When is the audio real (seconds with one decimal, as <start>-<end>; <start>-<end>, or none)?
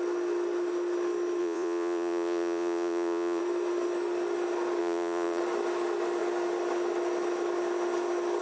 0.0-1.4; 3.4-4.8; 5.4-8.4